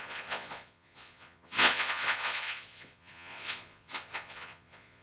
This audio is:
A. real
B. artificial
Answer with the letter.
B